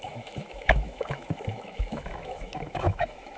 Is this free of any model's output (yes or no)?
no